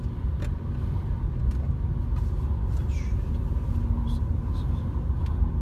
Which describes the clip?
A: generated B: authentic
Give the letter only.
B